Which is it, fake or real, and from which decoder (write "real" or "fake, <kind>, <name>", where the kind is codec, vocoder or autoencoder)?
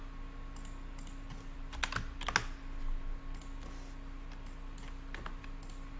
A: real